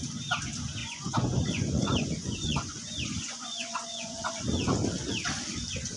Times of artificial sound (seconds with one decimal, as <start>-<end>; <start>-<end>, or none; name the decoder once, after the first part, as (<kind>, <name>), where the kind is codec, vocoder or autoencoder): 0.8-4.3 (vocoder, Vocos)